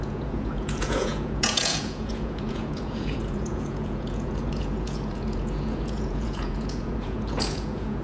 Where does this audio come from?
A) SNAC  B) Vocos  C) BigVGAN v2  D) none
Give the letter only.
B